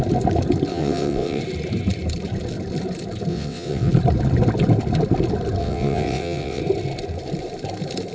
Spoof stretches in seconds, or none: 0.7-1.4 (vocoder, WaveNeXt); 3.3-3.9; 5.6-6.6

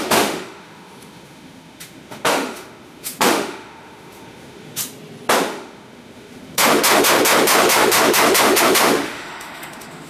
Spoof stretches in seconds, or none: 0.0-4.8 (autoencoder, DAC-VAE); 5.4-10.1